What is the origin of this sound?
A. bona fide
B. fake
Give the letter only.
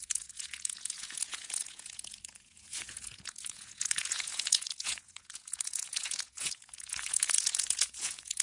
B